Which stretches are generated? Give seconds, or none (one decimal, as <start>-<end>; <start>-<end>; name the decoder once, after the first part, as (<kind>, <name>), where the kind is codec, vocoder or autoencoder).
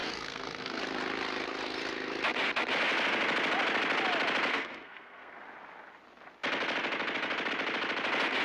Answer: 0.0-0.8 (codec, SNAC); 4.5-5.4